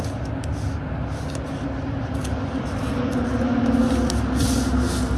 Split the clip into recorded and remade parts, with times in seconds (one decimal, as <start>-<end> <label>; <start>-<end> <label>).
0.0-5.2 recorded